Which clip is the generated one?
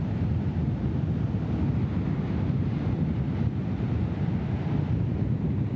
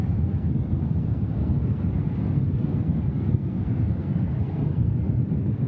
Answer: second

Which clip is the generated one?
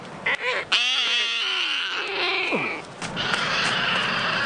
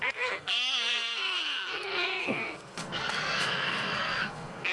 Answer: second